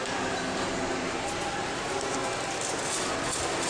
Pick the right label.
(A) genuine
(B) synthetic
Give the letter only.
A